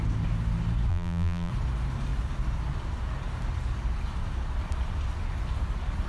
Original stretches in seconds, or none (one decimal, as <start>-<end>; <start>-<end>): 0.0-0.9; 1.5-6.1